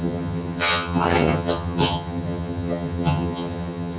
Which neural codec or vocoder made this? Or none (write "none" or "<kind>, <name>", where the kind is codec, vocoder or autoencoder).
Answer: vocoder, HiFi-GAN